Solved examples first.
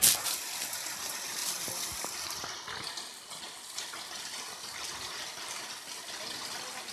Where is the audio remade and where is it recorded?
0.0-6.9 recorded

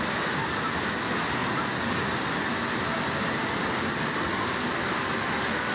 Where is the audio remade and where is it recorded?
0.0-5.7 recorded

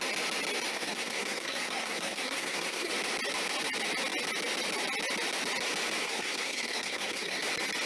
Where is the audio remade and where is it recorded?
0.0-0.7 recorded; 0.7-2.9 remade; 2.9-6.0 recorded; 6.0-7.4 remade; 7.4-7.9 recorded

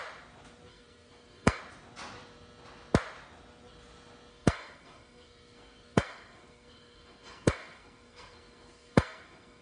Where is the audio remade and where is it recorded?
0.0-0.7 recorded; 0.7-1.6 remade; 1.6-4.3 recorded; 4.3-9.6 remade

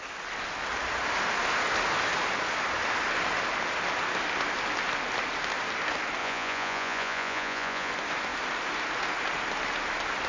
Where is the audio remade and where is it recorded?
0.0-6.2 recorded; 6.2-7.9 remade; 7.9-10.3 recorded

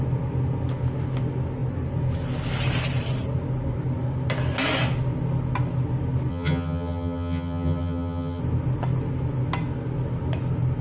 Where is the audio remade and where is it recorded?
0.0-6.3 recorded; 6.3-8.4 remade; 8.4-10.8 recorded

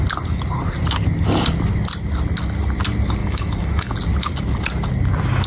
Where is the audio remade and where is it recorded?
0.0-3.2 recorded; 3.2-3.9 remade; 3.9-5.5 recorded